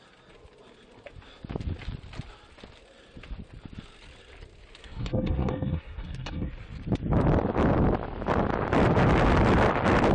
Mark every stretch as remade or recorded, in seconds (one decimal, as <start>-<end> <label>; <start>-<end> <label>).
0.0-4.8 recorded; 4.8-6.5 remade; 6.5-10.1 recorded